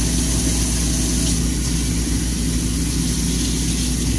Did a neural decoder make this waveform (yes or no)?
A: no